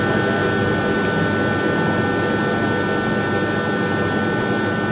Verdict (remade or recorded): recorded